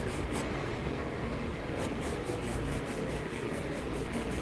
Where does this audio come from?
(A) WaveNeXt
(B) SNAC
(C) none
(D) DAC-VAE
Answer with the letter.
B